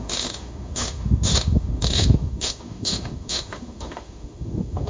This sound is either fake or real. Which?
fake